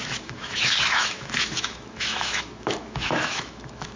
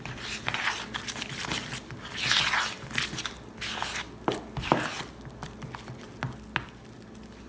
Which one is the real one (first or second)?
second